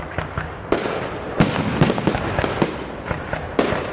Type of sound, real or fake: real